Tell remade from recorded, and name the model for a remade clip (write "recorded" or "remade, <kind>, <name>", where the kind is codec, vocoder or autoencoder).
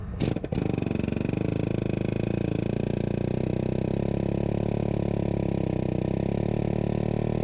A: recorded